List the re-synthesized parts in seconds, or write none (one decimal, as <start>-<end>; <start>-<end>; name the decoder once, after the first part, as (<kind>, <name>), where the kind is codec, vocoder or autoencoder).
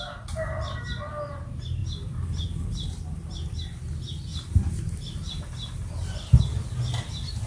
none